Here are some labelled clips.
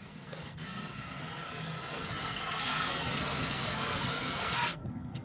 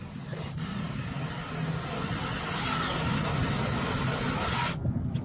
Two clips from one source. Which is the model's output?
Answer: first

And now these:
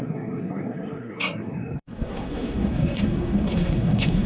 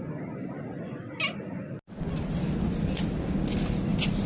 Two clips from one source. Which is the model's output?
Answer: first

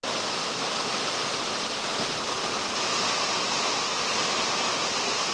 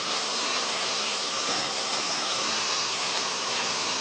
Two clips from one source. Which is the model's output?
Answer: second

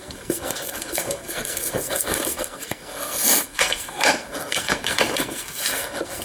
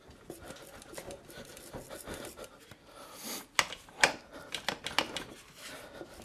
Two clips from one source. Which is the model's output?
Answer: first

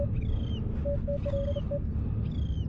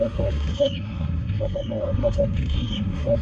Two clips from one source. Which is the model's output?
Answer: second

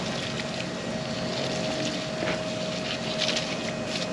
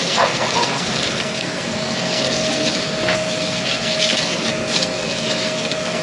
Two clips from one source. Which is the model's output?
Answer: second